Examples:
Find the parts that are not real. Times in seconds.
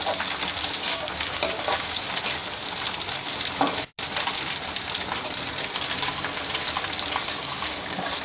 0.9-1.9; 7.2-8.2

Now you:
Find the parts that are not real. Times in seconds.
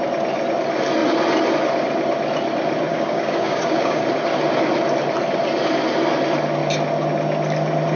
2.9-4.0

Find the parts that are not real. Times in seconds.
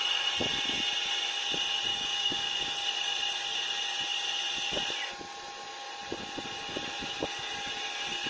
1.9-2.7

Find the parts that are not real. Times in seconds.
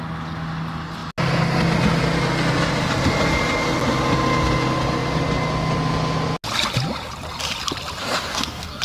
8.0-8.8